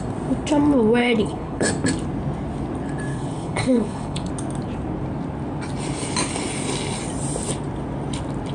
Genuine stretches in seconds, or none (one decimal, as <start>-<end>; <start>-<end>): 0.0-1.0; 1.7-3.1; 4.3-8.5